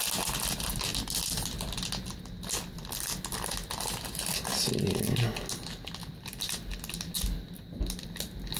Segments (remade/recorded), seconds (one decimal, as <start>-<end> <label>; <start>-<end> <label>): 0.0-8.6 recorded